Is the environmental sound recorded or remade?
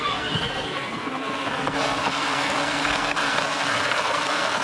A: remade